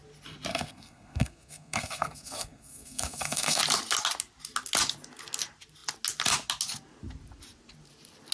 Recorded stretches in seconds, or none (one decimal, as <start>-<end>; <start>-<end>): 0.0-0.5; 3.6-8.3